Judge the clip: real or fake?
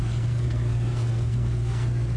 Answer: fake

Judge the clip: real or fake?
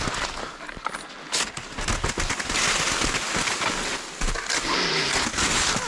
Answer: real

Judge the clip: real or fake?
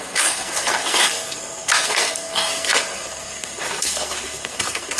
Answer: fake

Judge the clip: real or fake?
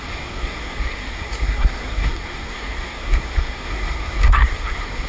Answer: fake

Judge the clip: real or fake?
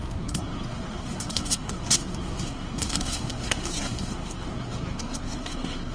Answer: fake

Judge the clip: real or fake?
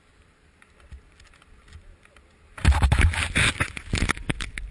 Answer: real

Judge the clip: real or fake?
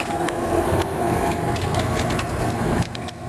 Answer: fake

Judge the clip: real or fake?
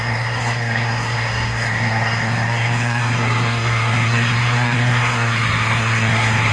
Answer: fake